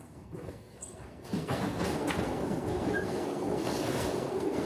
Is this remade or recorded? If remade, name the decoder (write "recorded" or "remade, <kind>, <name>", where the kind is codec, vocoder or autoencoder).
remade, codec, SNAC